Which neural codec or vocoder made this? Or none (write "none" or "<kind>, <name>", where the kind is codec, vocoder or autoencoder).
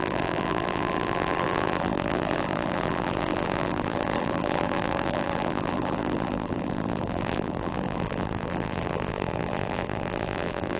vocoder, BigVGAN v2